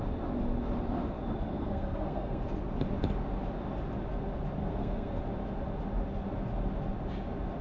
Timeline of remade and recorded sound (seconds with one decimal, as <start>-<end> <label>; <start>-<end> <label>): 0.0-1.5 recorded; 1.5-2.4 remade; 2.4-4.6 recorded; 4.6-5.2 remade; 5.2-7.6 recorded